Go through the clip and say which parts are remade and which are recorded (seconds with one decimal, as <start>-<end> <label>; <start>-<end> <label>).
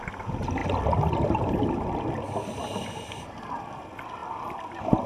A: 0.0-5.1 recorded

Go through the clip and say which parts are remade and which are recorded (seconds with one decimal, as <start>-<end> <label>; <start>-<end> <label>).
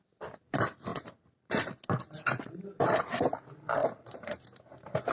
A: 0.0-0.9 recorded; 0.9-1.7 remade; 1.7-3.8 recorded; 3.8-4.4 remade; 4.4-5.1 recorded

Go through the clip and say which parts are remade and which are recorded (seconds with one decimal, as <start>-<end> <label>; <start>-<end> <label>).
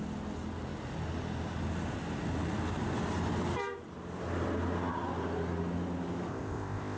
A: 0.0-6.3 recorded; 6.3-7.0 remade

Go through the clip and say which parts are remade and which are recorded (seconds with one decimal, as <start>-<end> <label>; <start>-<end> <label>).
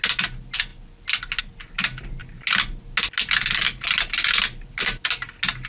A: 0.0-5.7 recorded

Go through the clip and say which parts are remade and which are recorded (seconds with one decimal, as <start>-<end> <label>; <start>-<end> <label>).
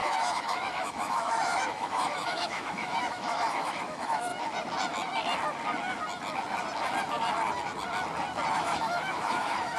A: 0.0-4.3 remade; 4.3-8.5 recorded; 8.5-9.8 remade